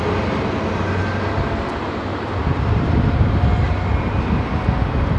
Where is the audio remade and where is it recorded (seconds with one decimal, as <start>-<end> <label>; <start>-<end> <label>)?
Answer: 0.0-2.1 recorded; 2.1-3.4 remade; 3.4-5.2 recorded